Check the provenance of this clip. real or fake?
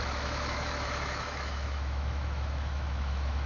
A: fake